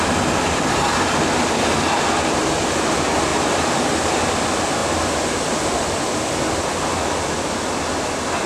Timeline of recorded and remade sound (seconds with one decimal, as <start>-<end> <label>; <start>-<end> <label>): 0.0-8.5 recorded